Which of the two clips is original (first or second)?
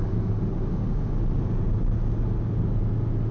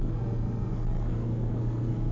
first